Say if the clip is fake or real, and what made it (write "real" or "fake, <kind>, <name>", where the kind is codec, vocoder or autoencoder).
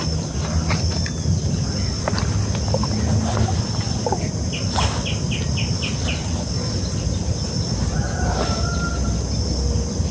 real